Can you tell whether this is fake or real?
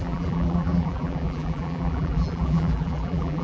fake